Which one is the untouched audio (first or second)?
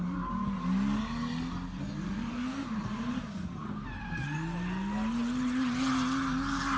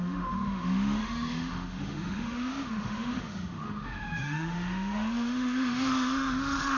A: first